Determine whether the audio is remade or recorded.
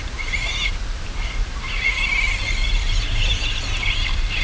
remade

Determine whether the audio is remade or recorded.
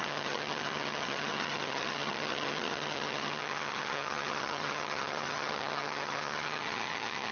remade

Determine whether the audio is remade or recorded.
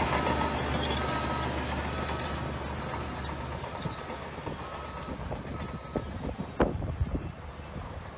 recorded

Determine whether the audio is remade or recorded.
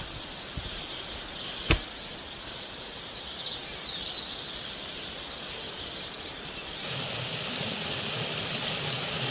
recorded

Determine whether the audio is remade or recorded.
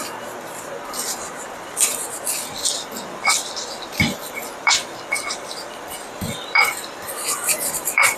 remade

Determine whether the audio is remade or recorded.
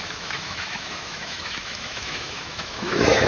remade